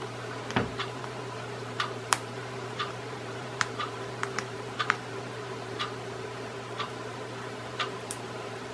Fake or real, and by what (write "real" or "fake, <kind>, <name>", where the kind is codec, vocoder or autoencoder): fake, vocoder, BigVGAN v2